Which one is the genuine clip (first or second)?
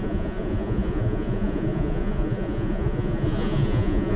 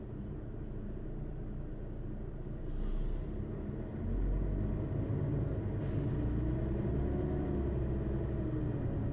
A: second